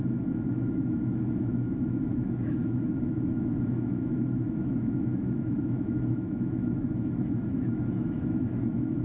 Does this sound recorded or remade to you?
remade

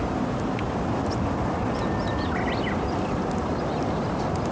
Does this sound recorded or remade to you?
recorded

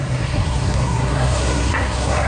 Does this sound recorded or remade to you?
remade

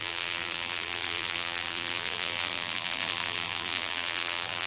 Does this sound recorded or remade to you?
remade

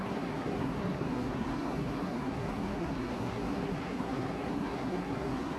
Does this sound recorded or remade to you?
remade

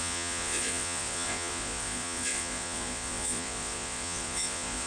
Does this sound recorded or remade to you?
remade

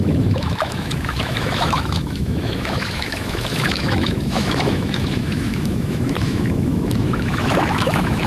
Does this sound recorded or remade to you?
remade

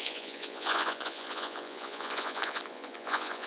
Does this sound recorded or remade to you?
remade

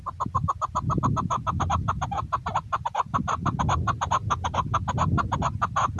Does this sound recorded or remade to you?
recorded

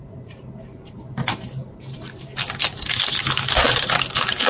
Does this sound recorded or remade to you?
remade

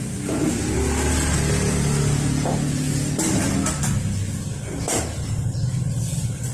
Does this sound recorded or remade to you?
recorded